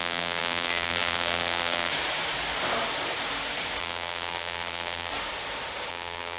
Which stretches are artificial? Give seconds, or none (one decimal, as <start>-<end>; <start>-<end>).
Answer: 0.0-1.9; 3.8-5.1; 5.9-6.4